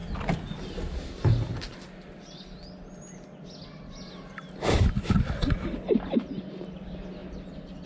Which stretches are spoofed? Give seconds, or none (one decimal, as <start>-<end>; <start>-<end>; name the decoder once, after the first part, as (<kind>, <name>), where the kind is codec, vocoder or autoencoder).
none